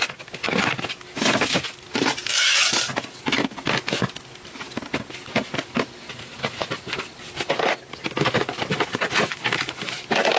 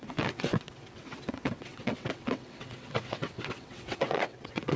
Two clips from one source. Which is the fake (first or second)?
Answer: second